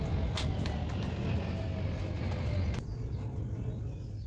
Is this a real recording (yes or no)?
yes